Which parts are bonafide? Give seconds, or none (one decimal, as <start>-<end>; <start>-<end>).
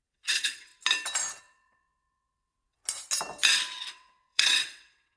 0.7-1.4; 2.8-3.9